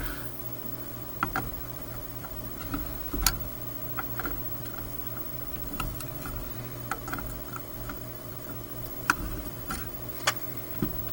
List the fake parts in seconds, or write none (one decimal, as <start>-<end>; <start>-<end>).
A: 0.0-3.8; 4.6-11.1